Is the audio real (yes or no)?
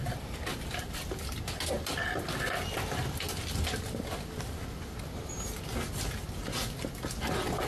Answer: yes